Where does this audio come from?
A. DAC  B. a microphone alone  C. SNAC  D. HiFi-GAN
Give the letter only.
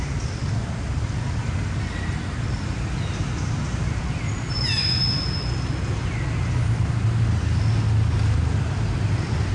B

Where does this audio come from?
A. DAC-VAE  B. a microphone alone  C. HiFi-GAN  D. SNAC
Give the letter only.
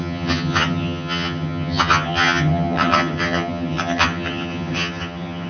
C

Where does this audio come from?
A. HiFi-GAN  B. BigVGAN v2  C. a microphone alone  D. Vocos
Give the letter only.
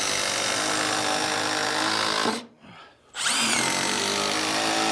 C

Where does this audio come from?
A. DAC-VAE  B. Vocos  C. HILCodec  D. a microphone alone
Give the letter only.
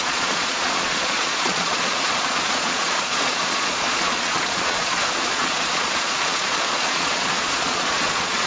B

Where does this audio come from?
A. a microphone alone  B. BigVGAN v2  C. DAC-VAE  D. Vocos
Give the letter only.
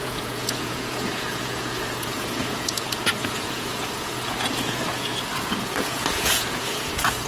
D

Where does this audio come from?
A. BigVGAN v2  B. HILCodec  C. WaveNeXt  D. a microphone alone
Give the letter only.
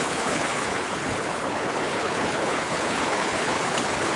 B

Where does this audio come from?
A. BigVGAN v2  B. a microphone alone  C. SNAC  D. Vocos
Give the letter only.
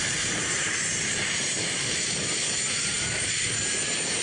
A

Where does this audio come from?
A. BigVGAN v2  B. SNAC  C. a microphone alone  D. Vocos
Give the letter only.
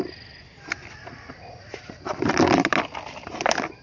C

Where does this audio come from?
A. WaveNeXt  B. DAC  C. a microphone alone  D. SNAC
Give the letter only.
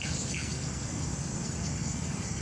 D